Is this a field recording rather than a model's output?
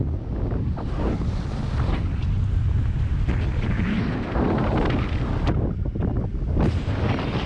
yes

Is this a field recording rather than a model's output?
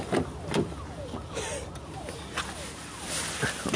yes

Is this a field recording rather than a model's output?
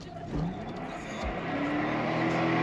yes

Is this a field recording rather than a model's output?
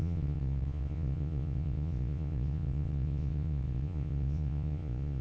no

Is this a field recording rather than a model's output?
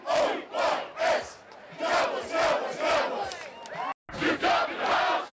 yes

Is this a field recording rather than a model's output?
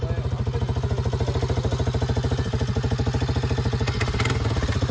yes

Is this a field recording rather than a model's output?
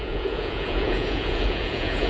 no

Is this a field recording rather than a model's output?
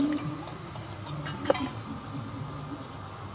yes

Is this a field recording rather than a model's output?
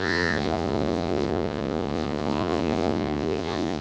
no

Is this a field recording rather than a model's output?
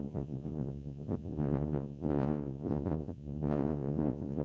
no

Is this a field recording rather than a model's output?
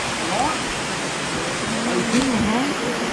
yes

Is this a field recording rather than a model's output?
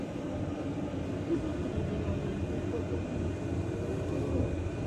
yes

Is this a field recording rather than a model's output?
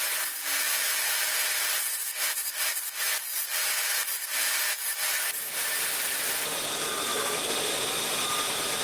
yes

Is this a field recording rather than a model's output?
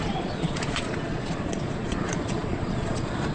no